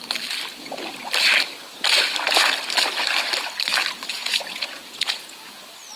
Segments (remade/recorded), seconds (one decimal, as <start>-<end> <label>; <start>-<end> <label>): 0.0-4.1 recorded; 4.1-5.6 remade; 5.6-6.0 recorded